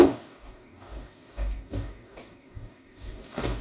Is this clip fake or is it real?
fake